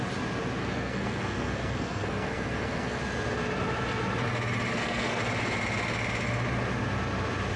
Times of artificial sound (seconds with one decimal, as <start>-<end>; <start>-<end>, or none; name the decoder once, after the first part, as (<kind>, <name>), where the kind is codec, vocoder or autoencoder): 0.6-3.0 (codec, SNAC); 4.7-5.2